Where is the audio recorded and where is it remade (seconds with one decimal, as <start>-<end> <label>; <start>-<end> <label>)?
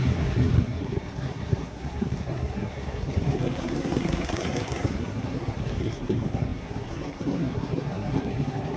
0.0-8.8 remade